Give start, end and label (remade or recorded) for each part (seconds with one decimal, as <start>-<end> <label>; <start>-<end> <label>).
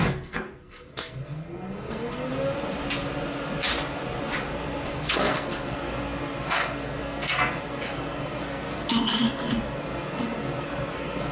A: 0.0-2.3 remade; 2.3-4.4 recorded; 4.4-11.3 remade